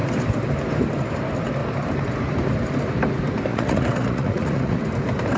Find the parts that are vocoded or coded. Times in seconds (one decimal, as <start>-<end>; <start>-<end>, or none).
3.5-4.8